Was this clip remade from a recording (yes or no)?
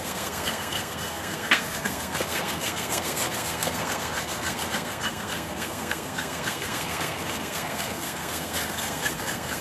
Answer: yes